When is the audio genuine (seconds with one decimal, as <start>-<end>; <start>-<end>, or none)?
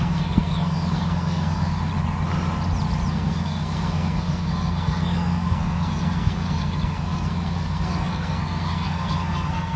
1.9-3.1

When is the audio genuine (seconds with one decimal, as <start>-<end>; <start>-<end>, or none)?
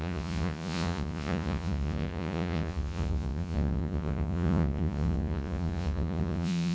none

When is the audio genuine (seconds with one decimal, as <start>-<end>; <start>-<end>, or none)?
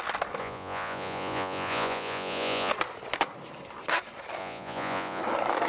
0.0-0.4; 2.7-4.4; 5.2-5.7